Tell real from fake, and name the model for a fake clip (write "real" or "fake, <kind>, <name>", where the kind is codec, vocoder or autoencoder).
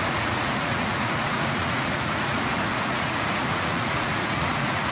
fake, vocoder, Vocos